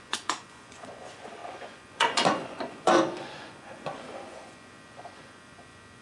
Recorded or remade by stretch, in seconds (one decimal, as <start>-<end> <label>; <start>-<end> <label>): 0.0-6.0 remade